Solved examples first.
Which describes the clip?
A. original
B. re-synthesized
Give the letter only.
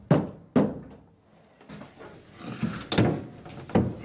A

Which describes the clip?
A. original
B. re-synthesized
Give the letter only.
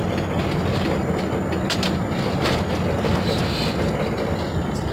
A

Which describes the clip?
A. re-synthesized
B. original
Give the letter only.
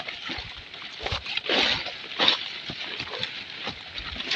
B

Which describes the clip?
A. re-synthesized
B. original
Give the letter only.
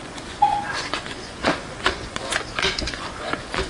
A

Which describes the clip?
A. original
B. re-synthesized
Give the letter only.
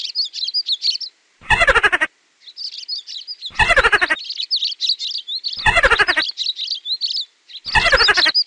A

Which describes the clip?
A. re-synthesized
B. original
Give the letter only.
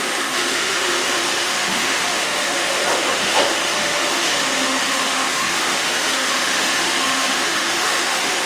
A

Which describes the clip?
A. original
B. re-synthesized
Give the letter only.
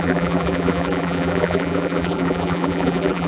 B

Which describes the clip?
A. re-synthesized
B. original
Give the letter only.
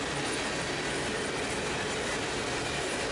B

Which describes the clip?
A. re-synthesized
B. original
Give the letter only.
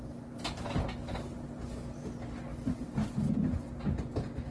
B